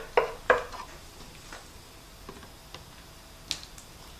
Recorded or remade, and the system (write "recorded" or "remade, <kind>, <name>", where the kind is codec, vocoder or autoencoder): recorded